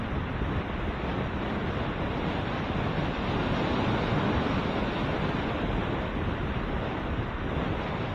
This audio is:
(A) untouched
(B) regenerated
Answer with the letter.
A